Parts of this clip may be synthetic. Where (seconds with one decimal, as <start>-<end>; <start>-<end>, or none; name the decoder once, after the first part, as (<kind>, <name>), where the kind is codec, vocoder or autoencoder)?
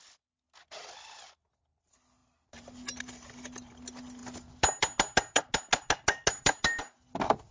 none